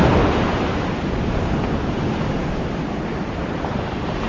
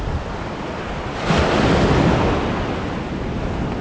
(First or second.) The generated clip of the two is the first